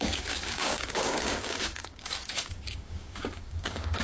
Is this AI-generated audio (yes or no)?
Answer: yes